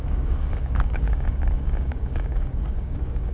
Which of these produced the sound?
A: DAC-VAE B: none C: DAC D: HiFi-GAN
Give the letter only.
C